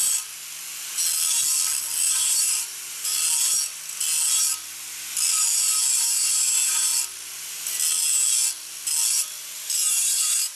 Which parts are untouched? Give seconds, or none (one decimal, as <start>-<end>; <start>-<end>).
0.0-2.1; 3.1-6.0; 6.9-9.9

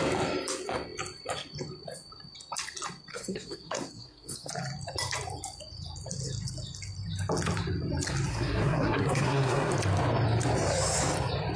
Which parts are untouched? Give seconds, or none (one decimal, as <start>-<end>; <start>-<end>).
0.0-3.1; 4.5-8.3; 9.7-11.6

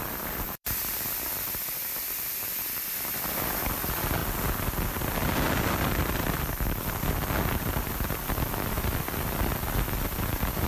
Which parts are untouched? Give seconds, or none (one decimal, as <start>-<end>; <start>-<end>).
none

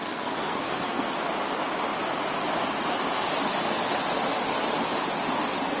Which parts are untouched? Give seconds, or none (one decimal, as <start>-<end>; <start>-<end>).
1.2-5.8

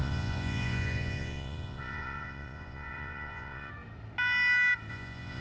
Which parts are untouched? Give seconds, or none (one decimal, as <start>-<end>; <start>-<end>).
3.7-4.9